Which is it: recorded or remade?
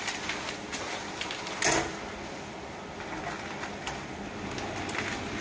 recorded